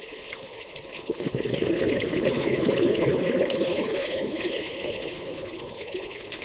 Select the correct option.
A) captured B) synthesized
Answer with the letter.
B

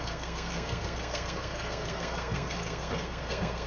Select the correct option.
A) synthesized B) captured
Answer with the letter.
A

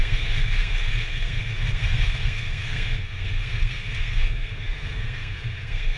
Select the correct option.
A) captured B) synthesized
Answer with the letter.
B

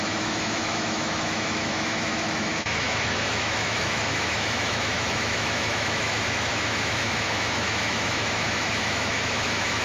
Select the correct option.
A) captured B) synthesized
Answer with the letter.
B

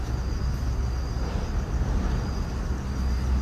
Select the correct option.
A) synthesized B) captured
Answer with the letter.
B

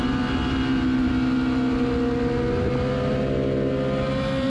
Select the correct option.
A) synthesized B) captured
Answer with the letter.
B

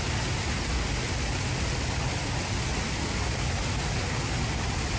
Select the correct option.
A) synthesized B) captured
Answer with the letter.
B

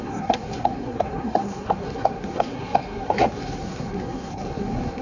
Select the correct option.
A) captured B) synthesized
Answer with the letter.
B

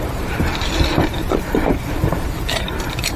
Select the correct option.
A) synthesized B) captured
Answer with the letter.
A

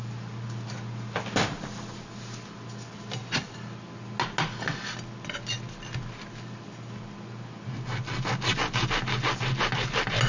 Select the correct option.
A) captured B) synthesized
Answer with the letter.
A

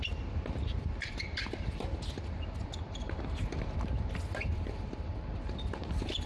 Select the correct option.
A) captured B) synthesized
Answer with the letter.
B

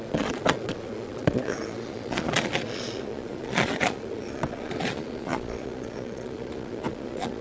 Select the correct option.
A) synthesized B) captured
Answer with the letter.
A